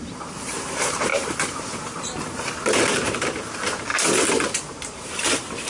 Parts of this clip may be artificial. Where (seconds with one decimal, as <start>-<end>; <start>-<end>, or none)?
0.0-3.9; 4.5-5.7